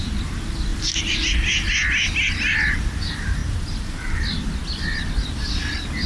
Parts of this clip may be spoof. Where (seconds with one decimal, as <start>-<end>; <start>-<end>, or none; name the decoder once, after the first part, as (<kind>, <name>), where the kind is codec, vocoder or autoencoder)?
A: 0.7-1.3 (vocoder, BigVGAN v2); 3.4-5.0